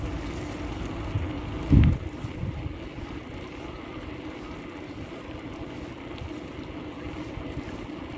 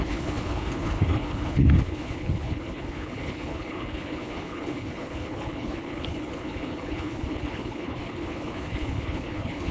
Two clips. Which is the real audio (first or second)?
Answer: first